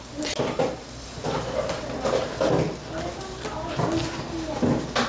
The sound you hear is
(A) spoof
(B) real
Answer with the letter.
B